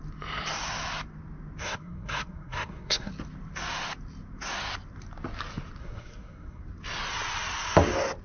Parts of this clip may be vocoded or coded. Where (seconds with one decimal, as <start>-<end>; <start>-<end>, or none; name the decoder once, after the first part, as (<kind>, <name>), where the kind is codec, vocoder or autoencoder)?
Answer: 1.6-3.1 (codec, SNAC); 5.8-6.6